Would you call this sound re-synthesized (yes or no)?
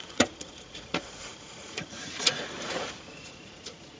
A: yes